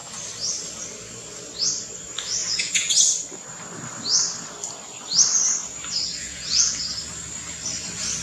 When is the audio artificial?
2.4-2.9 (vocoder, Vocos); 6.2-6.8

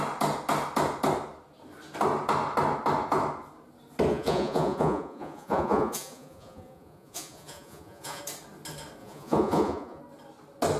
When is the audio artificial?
4.1-8.2 (vocoder, Vocos); 9.0-10.0

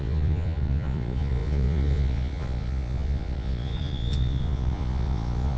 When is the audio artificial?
0.0-5.6 (vocoder, Vocos)

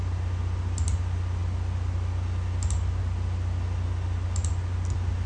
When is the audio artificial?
none

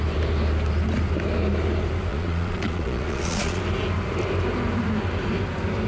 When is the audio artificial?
2.1-3.6 (vocoder, Vocos)

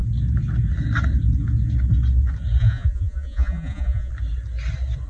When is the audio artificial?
2.6-4.1 (vocoder, Vocos)

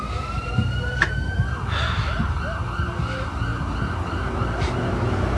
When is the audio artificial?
none